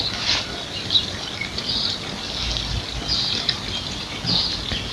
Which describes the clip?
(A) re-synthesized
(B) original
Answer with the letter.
B